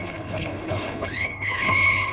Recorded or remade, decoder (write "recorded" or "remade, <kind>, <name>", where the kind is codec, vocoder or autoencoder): remade, codec, HILCodec